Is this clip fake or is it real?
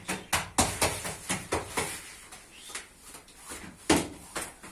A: real